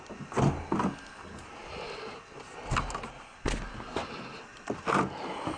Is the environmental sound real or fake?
real